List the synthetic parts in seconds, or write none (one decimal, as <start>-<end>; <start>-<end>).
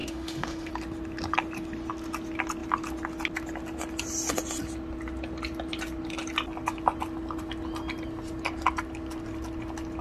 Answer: 0.0-0.7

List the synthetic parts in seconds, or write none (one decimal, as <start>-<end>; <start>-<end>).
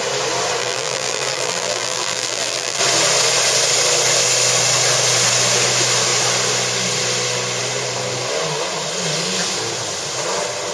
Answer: 0.6-2.8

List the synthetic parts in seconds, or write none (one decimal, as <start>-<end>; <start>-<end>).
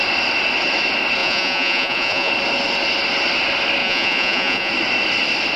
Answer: 1.2-2.3; 3.8-4.7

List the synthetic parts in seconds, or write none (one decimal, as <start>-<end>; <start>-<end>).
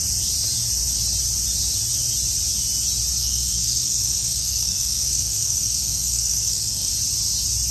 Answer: 3.2-6.9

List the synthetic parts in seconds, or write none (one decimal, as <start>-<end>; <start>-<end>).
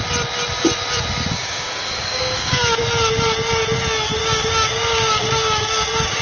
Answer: 1.4-2.8; 4.2-6.2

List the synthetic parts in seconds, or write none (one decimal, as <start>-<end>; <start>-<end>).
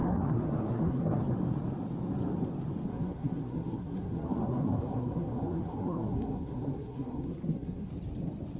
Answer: 0.0-1.2; 2.9-7.9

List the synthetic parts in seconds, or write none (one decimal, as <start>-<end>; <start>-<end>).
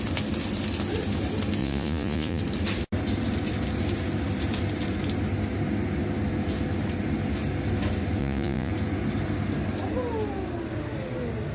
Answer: 1.6-2.4; 8.2-8.7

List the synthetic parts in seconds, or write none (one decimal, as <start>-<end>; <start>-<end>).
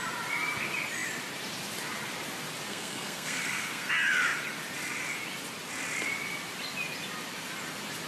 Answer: 2.7-3.9